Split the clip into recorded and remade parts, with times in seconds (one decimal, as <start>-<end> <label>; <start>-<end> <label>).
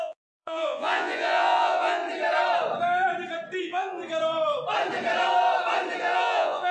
0.0-2.0 remade; 2.0-3.6 recorded; 3.6-4.0 remade; 4.0-6.0 recorded; 6.0-6.7 remade